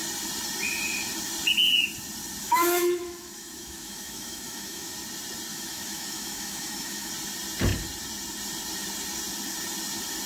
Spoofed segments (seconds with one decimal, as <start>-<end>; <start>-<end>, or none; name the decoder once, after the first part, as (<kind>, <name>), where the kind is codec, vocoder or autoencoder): 2.4-4.9 (autoencoder, DAC-VAE); 5.5-7.1